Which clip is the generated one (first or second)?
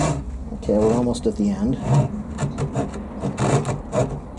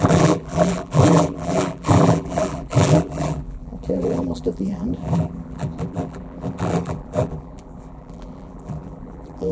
second